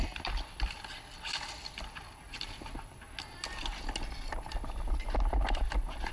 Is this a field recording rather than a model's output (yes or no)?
yes